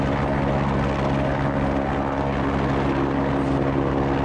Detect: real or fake real